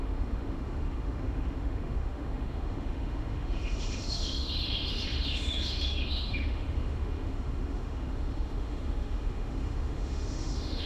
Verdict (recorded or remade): remade